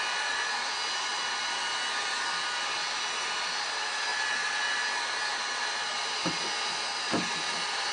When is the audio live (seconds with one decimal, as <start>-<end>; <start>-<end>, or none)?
0.0-7.9